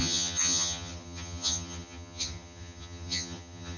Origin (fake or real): fake